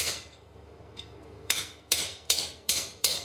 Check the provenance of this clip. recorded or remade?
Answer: remade